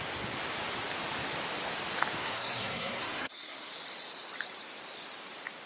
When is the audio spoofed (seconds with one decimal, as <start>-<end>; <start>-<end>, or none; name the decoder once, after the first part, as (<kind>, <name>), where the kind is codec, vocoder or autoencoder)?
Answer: 2.2-3.7 (codec, SNAC)